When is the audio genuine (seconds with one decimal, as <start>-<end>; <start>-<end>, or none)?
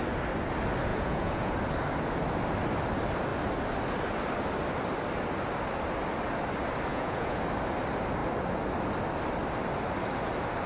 0.0-0.9; 1.5-6.9; 7.4-10.7